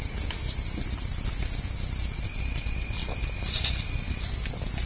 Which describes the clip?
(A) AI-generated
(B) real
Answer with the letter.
B